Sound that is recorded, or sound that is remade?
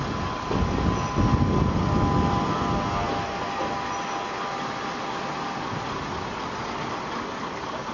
recorded